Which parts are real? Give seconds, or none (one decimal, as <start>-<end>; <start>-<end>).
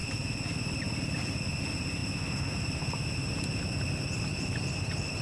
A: 0.0-5.2